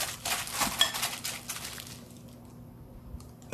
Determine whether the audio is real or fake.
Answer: real